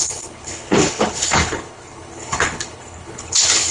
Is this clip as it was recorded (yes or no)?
no